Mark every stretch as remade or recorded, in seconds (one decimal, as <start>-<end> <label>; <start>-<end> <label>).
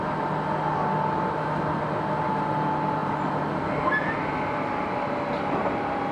0.0-6.1 recorded